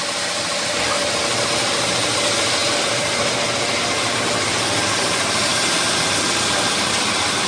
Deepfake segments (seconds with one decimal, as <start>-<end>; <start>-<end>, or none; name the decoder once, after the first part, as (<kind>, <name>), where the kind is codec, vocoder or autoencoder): 2.6-3.6 (vocoder, BigVGAN v2)